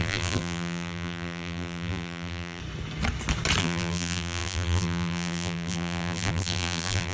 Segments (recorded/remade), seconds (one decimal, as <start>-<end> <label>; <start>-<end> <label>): 0.0-2.6 remade; 2.6-3.6 recorded; 3.6-7.1 remade